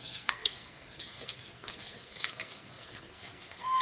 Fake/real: fake